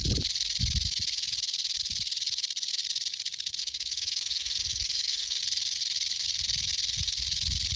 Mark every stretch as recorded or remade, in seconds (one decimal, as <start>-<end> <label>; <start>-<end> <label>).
0.0-3.6 recorded; 3.6-5.4 remade; 5.4-7.8 recorded